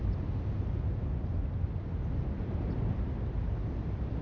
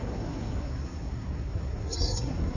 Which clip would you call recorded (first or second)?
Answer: first